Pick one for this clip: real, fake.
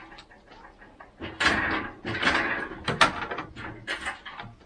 real